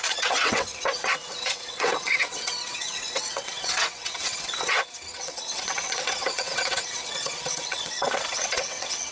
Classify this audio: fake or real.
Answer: fake